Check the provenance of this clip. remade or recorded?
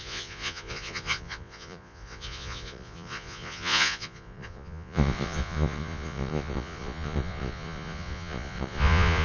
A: remade